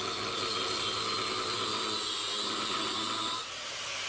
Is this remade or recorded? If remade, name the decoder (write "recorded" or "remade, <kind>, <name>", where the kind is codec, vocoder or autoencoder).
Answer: recorded